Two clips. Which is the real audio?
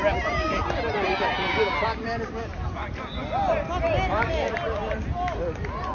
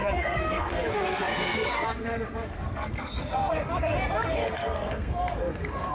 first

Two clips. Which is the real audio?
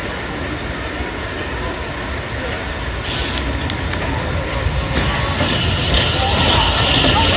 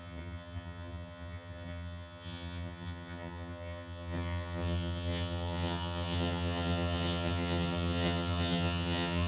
first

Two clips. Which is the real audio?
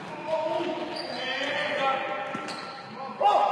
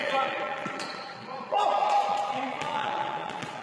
first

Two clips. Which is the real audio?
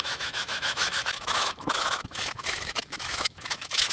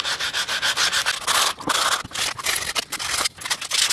second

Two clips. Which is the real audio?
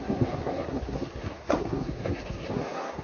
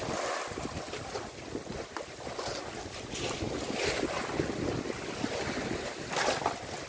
second